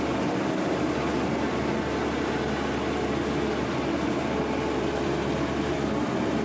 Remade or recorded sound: recorded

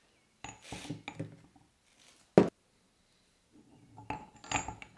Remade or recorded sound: recorded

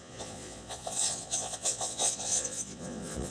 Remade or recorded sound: remade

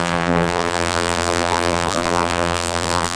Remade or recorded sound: remade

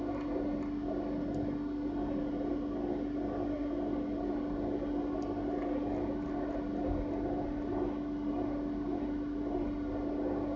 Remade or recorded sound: recorded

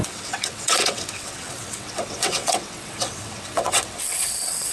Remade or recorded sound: remade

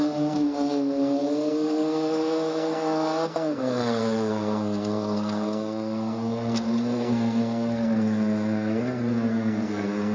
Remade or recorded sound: remade